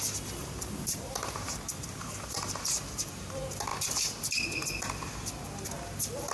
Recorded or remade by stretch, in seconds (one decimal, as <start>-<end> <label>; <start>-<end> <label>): 0.0-0.4 recorded; 0.4-3.3 remade; 3.3-6.3 recorded

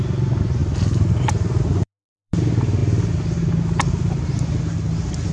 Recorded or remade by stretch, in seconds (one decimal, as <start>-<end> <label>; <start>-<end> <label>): 0.0-0.6 recorded; 0.6-2.4 remade; 2.4-5.3 recorded

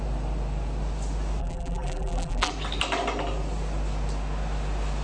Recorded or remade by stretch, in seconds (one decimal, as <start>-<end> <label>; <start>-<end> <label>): 0.0-1.4 recorded; 1.4-2.5 remade; 2.5-5.0 recorded

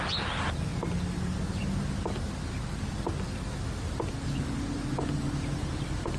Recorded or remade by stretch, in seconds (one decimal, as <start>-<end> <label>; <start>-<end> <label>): 0.0-4.9 recorded; 4.9-6.2 remade

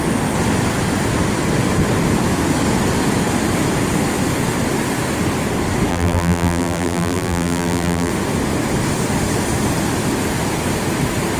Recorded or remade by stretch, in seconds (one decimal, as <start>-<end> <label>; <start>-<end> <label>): 0.0-5.9 recorded; 5.9-8.1 remade; 8.1-11.4 recorded

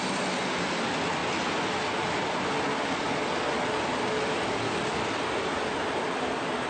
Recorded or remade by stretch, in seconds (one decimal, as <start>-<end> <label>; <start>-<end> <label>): 0.0-6.7 recorded

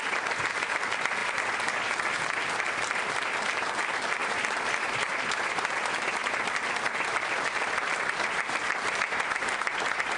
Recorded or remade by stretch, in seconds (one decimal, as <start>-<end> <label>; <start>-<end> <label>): 0.0-6.2 recorded; 6.2-9.4 remade; 9.4-10.2 recorded

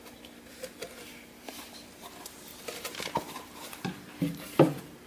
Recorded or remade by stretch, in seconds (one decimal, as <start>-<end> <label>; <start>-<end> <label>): 0.0-2.5 recorded; 2.5-5.1 remade